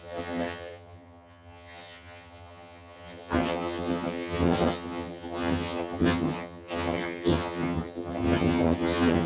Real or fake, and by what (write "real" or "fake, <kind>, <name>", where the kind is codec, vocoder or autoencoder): fake, vocoder, HiFi-GAN